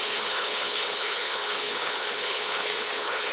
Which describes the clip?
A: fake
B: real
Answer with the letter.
A